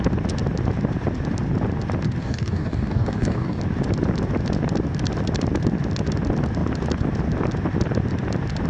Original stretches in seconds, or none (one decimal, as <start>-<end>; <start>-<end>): 0.0-2.2; 3.6-8.7